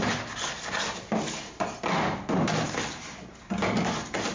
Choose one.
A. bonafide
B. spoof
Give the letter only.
A